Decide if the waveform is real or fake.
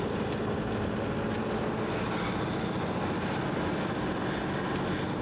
real